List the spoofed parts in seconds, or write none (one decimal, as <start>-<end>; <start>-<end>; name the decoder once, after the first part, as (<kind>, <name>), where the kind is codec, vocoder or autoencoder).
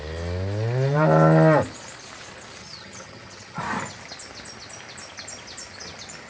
2.6-3.6 (vocoder, HiFi-GAN)